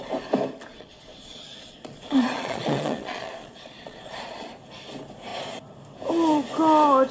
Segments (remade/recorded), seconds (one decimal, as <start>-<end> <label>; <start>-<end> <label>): 0.0-0.7 recorded; 0.7-4.5 remade; 4.5-7.1 recorded